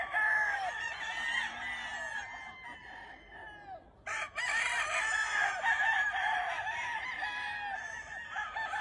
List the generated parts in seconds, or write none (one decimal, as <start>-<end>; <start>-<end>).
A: none

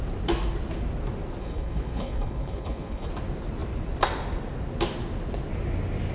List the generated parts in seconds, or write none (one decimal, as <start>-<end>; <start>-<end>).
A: 1.4-3.1

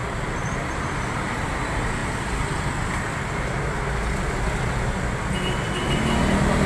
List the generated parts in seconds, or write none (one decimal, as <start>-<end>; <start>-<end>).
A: none

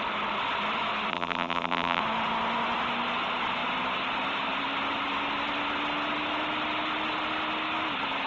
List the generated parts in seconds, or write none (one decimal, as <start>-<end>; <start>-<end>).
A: 1.1-2.0

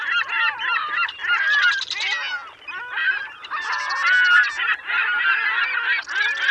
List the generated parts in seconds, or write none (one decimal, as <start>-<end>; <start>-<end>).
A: none

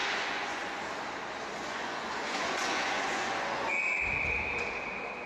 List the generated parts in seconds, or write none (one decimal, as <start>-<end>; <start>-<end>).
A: 0.0-0.8; 1.5-3.8

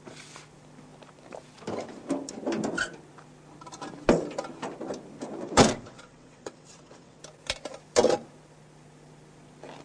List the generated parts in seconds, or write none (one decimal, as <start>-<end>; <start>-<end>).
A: 5.4-7.2

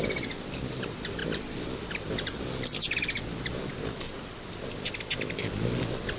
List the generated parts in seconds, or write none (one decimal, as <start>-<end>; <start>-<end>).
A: none